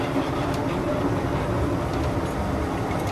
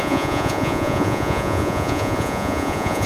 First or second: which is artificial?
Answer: second